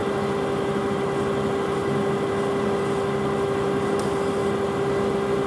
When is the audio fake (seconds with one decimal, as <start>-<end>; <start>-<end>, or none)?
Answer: none

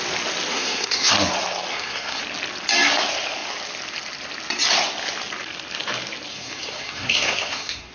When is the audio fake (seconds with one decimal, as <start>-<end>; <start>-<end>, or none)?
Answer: 0.5-1.1; 1.7-2.2; 6.3-7.9

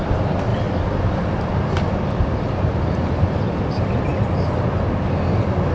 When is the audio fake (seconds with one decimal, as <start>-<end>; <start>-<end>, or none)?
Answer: 0.5-3.9

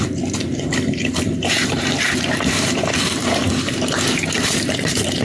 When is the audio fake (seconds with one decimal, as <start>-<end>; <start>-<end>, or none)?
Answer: 0.0-3.4; 4.4-5.2

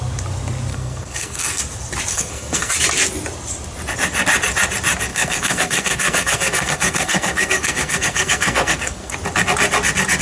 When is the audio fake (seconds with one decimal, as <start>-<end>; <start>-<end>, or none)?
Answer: 0.7-1.6; 2.1-2.7; 5.1-9.1